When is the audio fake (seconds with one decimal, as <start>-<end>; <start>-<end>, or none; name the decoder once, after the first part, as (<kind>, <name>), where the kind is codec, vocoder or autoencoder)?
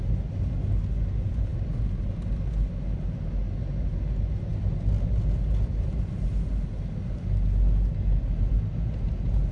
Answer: none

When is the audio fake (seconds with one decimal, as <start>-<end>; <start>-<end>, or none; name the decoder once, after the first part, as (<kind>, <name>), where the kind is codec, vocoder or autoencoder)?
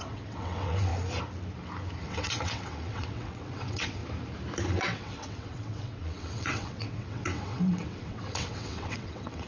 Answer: 0.0-0.9 (vocoder, WaveNeXt); 2.0-4.0; 4.7-9.5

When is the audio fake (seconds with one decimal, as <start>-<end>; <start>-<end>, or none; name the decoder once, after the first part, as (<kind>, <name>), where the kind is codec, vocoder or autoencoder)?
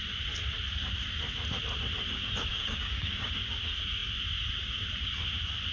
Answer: 2.5-3.3 (codec, DAC)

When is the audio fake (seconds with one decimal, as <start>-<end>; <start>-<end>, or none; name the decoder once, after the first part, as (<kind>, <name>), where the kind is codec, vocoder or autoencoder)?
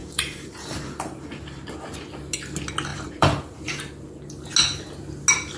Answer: 0.0-1.6 (vocoder, BigVGAN v2); 2.9-3.8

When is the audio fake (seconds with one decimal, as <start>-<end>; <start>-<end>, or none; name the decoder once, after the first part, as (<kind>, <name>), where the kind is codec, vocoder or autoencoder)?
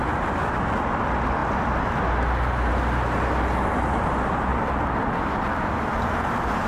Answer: none